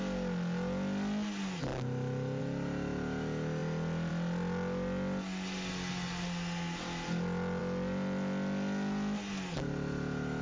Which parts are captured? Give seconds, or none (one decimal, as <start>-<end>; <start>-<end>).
0.0-10.4